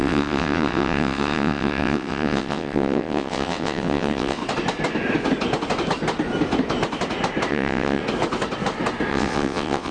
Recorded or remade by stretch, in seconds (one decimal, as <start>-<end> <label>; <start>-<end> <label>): 0.0-4.4 remade; 4.4-7.5 recorded; 7.5-8.0 remade; 8.0-9.1 recorded; 9.1-9.9 remade